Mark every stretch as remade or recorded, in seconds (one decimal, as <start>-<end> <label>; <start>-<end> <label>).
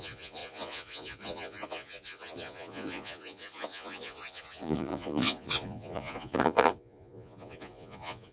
0.0-8.3 remade